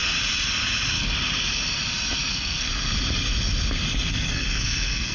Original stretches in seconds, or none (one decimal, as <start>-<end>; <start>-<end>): 0.0-2.3; 2.7-4.1